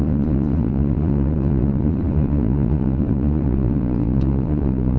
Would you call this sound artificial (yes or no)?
yes